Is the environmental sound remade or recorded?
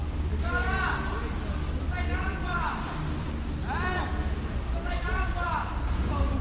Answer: remade